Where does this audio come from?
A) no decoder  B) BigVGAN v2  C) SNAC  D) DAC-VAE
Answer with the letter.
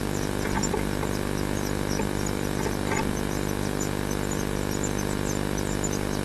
A